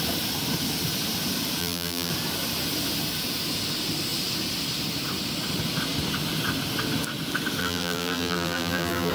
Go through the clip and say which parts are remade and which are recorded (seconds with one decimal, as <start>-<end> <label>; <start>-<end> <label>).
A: 0.0-1.6 recorded; 1.6-2.1 remade; 2.1-7.6 recorded; 7.6-9.1 remade